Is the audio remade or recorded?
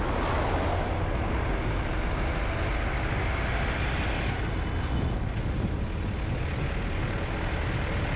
recorded